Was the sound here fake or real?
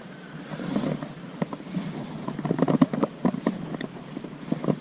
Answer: fake